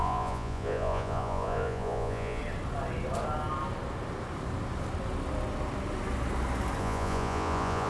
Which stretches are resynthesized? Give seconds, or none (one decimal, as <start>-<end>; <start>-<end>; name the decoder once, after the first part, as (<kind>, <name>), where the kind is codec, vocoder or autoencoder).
0.0-2.4 (vocoder, Vocos); 6.8-7.9